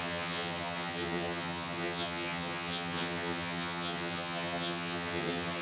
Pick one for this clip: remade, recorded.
remade